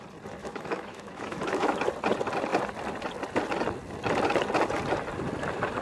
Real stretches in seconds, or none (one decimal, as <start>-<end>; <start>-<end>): 0.0-0.4; 1.8-5.8